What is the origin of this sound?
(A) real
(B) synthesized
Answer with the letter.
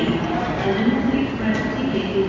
A